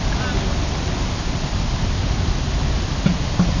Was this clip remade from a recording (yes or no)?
no